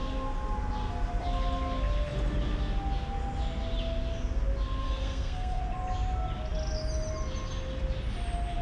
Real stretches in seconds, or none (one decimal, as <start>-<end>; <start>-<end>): 0.0-4.8; 5.6-8.6